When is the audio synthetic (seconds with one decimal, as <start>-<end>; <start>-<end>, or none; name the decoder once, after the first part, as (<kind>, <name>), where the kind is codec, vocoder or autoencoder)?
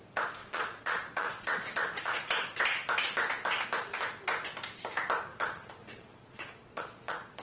0.4-2.3 (vocoder, Vocos); 5.3-7.4